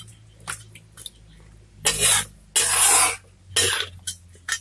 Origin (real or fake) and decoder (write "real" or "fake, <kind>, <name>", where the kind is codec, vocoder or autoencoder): real